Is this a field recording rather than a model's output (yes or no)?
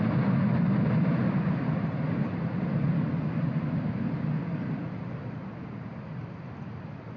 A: yes